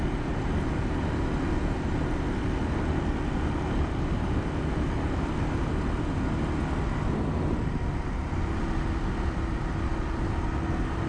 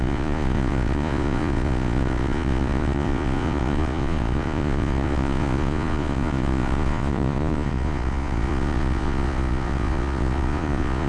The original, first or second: first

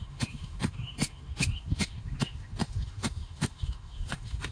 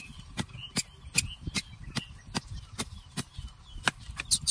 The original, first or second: second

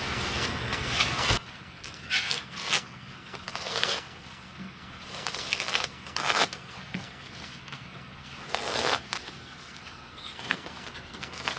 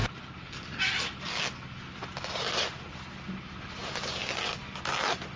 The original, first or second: second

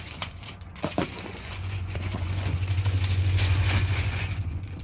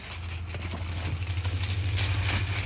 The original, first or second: second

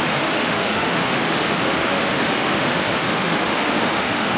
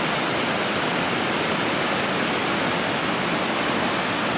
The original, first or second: second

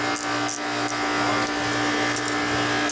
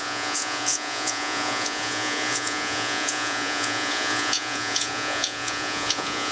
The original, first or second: first